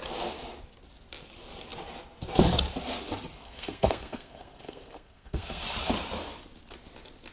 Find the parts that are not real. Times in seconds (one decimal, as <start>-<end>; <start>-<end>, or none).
3.3-5.6

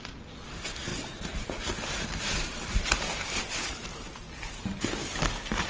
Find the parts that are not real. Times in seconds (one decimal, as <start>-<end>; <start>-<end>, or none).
0.9-4.3

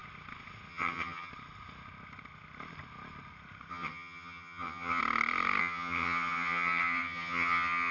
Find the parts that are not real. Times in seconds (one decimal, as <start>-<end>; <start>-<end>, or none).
0.7-1.3; 3.7-5.0; 5.6-7.9

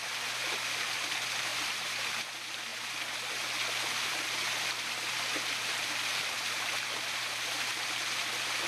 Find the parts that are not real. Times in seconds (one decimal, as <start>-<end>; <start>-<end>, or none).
1.5-2.1

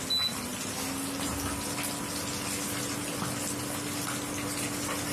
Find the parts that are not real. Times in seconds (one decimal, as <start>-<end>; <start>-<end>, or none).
none

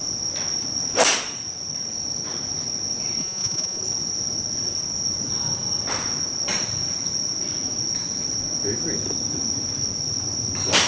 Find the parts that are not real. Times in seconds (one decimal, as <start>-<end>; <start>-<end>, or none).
3.2-3.8

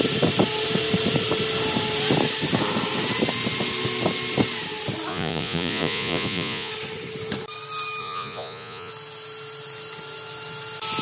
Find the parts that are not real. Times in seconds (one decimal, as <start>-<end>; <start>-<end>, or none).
5.1-6.7; 8.0-8.9